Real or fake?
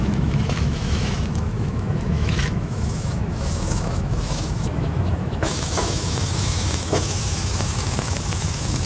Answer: fake